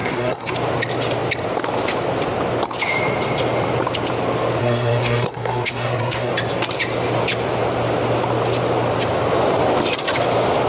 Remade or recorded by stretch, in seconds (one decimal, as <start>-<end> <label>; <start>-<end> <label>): 0.0-0.5 remade; 0.5-4.6 recorded; 4.6-6.3 remade; 6.3-10.7 recorded